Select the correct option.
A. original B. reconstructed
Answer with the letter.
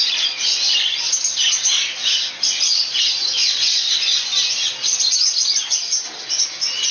A